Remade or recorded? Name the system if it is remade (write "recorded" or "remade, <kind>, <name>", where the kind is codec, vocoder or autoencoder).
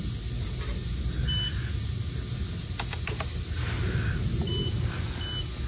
recorded